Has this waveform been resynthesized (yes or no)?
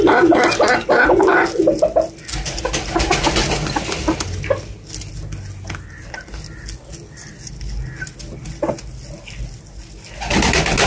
no